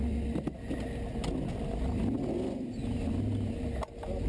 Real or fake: real